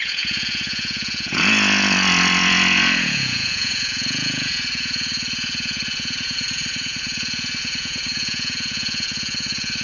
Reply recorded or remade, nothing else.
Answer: remade